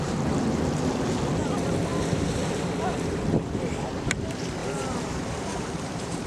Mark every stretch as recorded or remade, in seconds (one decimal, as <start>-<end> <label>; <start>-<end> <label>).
0.0-4.6 recorded; 4.6-6.3 remade